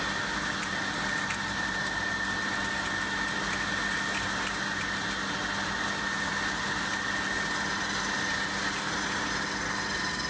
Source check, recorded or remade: recorded